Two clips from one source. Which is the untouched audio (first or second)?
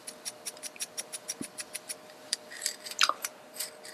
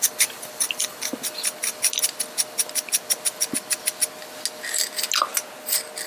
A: second